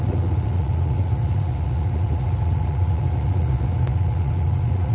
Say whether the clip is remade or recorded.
remade